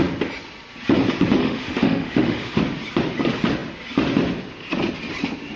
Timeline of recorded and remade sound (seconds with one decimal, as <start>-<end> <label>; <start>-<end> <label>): 0.0-1.4 recorded; 1.4-2.6 remade; 2.6-5.6 recorded